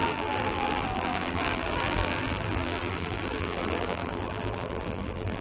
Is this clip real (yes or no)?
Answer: no